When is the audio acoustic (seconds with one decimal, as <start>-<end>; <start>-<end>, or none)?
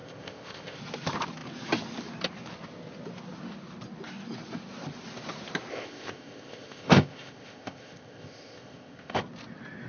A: 0.8-5.7; 9.2-9.9